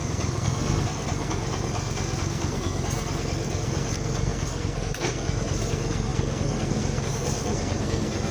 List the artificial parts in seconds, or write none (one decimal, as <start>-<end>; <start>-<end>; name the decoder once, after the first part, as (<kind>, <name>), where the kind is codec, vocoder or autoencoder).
0.0-8.3 (codec, SNAC)